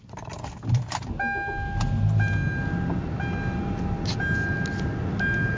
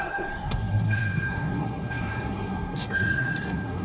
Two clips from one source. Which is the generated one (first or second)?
second